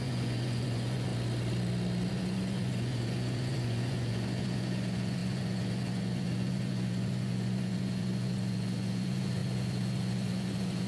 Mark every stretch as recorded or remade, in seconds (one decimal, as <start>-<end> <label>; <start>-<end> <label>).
0.0-1.1 remade; 1.1-2.1 recorded; 2.1-10.9 remade